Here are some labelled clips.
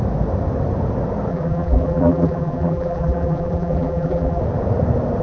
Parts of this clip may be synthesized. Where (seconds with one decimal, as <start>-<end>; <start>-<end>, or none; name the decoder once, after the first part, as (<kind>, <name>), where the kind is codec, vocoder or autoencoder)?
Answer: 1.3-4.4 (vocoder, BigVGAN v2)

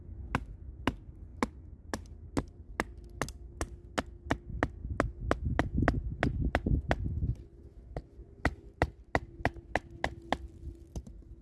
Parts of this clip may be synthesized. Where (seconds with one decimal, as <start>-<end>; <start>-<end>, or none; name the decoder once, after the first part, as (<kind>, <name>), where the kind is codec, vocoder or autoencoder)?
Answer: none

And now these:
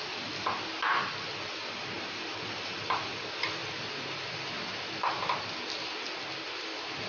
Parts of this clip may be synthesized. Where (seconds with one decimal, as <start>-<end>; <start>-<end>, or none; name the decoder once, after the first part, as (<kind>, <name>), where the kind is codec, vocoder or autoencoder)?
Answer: none

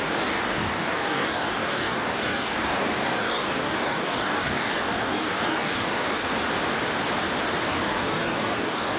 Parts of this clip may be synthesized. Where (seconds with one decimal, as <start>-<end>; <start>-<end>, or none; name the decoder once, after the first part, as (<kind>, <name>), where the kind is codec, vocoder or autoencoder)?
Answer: 0.0-6.3 (codec, DAC); 7.7-9.0

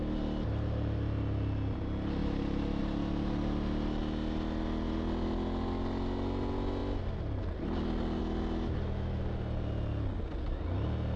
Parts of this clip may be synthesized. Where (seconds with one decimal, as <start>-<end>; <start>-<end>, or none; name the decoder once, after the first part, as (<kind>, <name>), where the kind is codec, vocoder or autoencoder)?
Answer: none